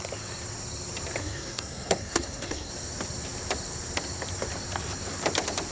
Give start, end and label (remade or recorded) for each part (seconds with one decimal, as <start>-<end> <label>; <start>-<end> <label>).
0.0-1.2 recorded; 1.2-2.7 remade; 2.7-5.7 recorded